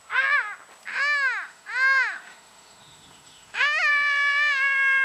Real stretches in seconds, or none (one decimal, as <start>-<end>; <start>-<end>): 0.0-0.9; 3.9-5.0